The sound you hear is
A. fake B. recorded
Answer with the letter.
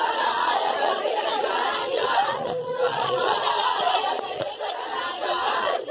A